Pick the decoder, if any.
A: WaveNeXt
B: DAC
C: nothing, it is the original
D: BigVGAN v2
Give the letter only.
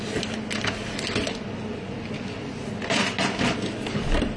C